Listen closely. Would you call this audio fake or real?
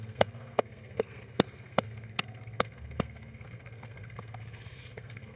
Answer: fake